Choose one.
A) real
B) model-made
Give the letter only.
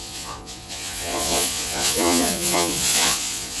B